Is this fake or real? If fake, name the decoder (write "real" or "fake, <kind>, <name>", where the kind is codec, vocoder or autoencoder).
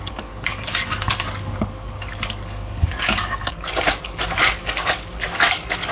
fake, codec, DAC